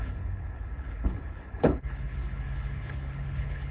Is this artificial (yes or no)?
yes